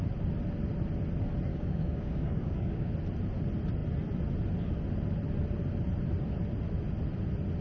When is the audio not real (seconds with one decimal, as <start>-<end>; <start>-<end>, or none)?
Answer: 1.5-2.9